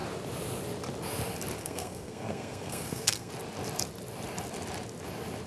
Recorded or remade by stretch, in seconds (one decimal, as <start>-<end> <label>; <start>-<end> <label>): 0.0-1.6 recorded; 1.6-3.3 remade; 3.3-5.5 recorded